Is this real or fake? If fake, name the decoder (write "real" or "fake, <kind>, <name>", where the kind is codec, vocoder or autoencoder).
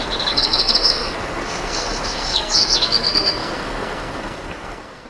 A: fake, codec, SNAC